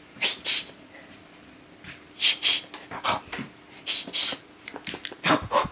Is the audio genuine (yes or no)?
yes